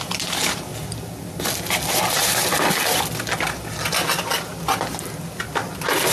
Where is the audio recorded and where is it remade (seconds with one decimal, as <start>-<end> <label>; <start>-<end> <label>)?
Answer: 0.0-0.7 remade; 0.7-2.0 recorded; 2.0-2.4 remade; 2.4-6.1 recorded